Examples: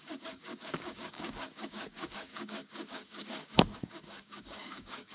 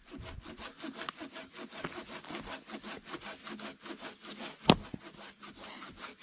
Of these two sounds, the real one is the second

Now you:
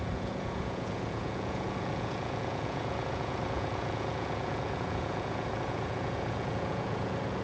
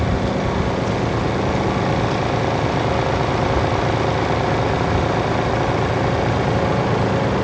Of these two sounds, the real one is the second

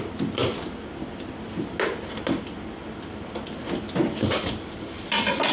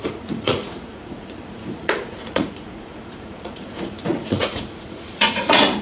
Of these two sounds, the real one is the first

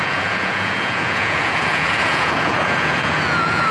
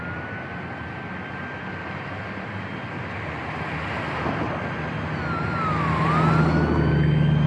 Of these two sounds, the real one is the second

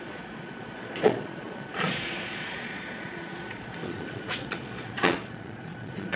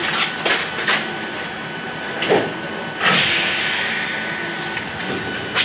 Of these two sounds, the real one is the second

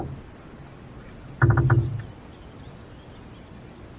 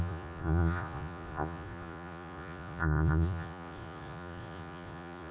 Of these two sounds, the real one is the first